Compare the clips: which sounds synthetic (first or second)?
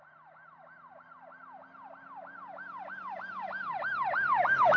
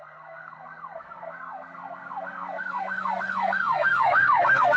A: second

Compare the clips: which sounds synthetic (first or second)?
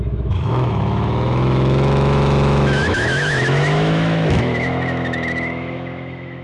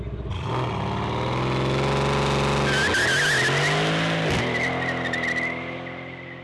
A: first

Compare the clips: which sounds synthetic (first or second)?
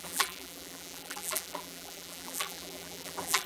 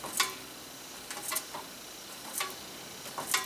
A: first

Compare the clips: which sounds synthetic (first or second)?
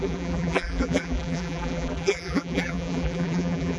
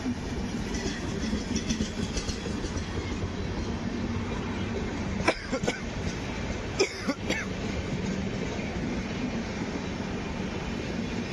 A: first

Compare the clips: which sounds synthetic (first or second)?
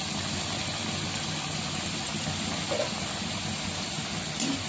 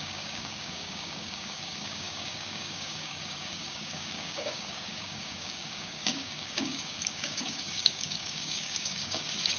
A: second